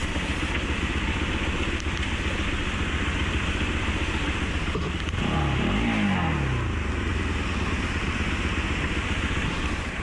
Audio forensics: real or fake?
real